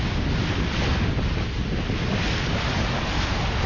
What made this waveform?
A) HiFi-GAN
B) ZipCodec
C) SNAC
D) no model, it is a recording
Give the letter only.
D